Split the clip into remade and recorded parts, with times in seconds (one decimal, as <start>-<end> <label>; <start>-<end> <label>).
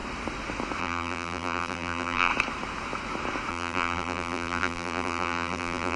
0.0-0.8 recorded; 0.8-2.3 remade; 2.3-3.5 recorded; 3.5-6.0 remade